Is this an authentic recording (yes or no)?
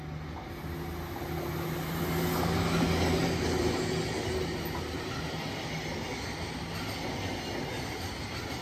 yes